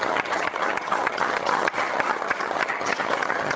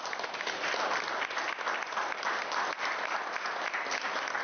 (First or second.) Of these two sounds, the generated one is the first